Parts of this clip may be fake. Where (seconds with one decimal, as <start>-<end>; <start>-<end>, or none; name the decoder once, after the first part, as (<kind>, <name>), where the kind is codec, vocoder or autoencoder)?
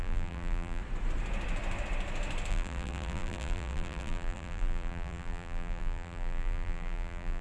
0.0-0.8 (vocoder, BigVGAN v2); 2.5-7.4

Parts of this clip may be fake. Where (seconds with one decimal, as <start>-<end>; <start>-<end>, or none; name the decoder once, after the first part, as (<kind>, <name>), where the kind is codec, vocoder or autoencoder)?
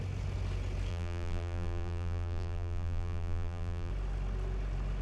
0.9-3.9 (vocoder, BigVGAN v2)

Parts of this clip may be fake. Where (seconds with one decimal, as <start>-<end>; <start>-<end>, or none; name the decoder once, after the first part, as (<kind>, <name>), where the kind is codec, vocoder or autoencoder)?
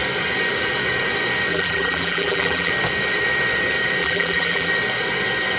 1.5-2.7 (vocoder, BigVGAN v2); 4.0-4.7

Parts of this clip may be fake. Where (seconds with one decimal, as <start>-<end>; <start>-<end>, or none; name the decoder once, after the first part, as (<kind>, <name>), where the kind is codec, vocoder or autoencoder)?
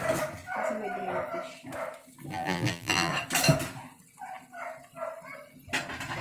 2.3-3.1 (vocoder, BigVGAN v2)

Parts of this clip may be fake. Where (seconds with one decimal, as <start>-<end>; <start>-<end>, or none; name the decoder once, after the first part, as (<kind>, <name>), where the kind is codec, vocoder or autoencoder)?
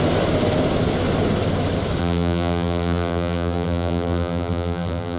2.0-5.2 (vocoder, BigVGAN v2)